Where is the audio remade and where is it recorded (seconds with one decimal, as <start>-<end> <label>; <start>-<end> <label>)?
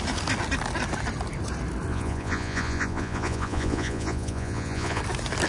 0.0-1.9 recorded; 1.9-5.0 remade; 5.0-5.5 recorded